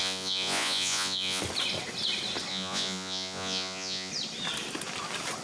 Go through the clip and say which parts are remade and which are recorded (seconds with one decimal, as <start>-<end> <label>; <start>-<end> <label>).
0.0-1.4 remade; 1.4-2.5 recorded; 2.5-4.1 remade; 4.1-5.4 recorded